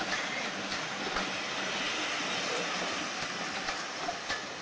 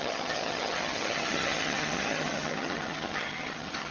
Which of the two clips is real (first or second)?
first